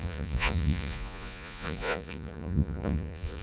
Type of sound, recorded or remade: remade